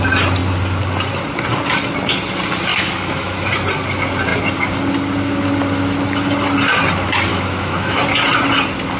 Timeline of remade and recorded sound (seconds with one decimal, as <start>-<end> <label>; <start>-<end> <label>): 0.0-2.7 recorded; 2.7-3.5 remade; 3.5-7.3 recorded; 7.3-8.0 remade; 8.0-9.0 recorded